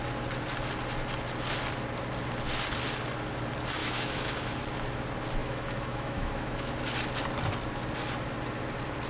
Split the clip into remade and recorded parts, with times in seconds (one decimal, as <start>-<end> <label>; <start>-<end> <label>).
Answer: 0.0-3.8 recorded; 3.8-4.5 remade; 4.5-5.4 recorded; 5.4-6.7 remade; 6.7-9.1 recorded